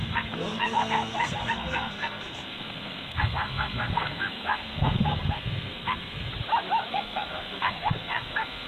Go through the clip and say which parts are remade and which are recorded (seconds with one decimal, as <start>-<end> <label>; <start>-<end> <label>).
0.0-6.3 remade; 6.3-6.9 recorded; 6.9-8.7 remade